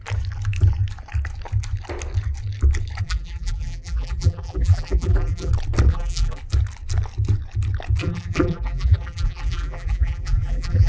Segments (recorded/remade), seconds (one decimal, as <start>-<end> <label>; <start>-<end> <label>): 0.0-3.0 recorded; 3.0-5.5 remade; 5.5-5.9 recorded; 5.9-6.4 remade; 6.4-8.0 recorded; 8.0-10.9 remade